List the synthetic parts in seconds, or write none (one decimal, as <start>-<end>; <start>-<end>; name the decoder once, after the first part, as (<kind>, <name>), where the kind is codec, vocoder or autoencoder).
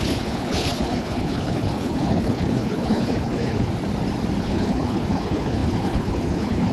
0.0-3.7 (codec, HILCodec); 4.4-6.7